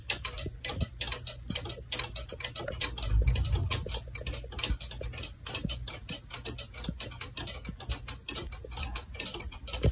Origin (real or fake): real